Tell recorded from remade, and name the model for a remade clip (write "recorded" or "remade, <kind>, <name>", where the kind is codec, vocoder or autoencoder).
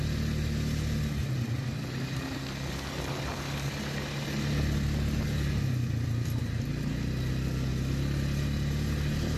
recorded